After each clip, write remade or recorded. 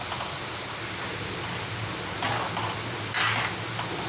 recorded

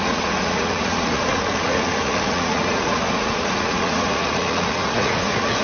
remade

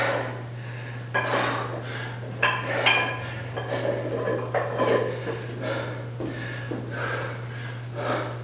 recorded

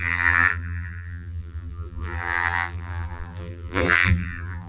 remade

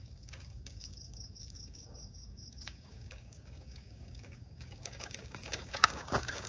remade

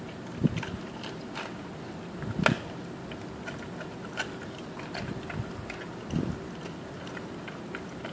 recorded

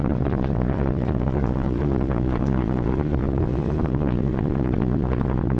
remade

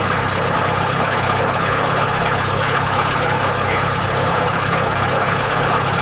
remade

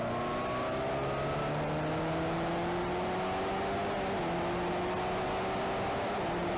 recorded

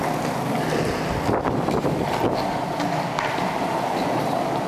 recorded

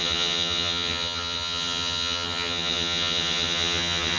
remade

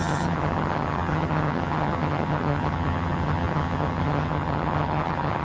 remade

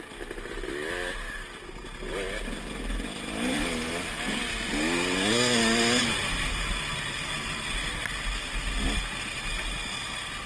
recorded